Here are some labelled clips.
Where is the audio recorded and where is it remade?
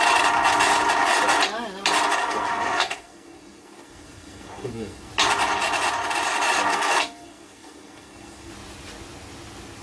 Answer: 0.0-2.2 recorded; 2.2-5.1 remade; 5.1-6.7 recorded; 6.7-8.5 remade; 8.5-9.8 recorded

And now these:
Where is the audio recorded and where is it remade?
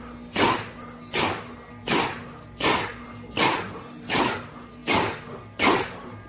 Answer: 0.0-6.3 recorded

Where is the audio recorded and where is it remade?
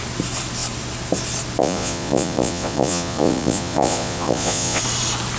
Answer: 0.0-1.6 recorded; 1.6-4.8 remade; 4.8-5.4 recorded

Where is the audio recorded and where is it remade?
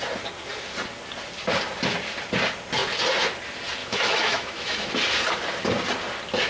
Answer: 0.0-3.8 recorded; 3.8-4.9 remade; 4.9-6.5 recorded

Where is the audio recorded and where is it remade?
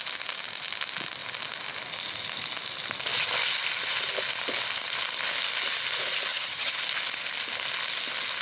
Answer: 0.0-6.3 recorded; 6.3-6.8 remade; 6.8-8.4 recorded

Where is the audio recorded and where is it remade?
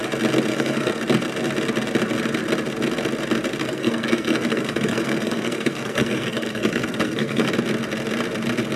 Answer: 0.0-0.5 recorded; 0.5-1.0 remade; 1.0-3.6 recorded; 3.6-7.5 remade; 7.5-8.8 recorded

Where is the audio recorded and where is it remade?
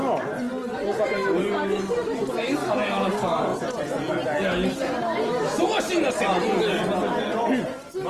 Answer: 0.0-0.6 recorded; 0.6-1.4 remade; 1.4-4.8 recorded; 4.8-6.3 remade; 6.3-8.1 recorded